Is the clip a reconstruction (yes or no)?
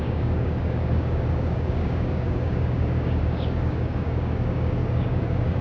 yes